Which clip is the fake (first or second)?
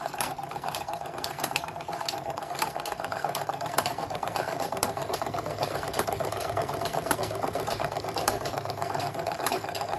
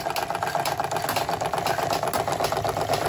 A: first